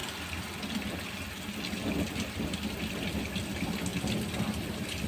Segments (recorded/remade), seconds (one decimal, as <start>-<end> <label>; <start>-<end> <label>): 0.0-5.1 recorded